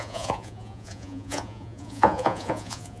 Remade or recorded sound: remade